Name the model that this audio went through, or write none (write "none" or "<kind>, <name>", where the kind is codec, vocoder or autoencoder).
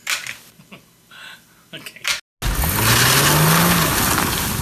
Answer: none